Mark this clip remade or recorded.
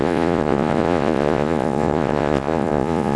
remade